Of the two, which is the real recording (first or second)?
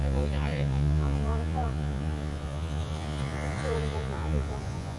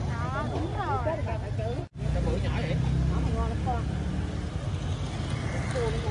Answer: second